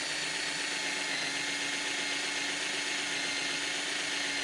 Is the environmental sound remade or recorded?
recorded